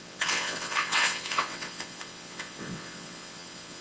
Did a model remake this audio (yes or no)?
yes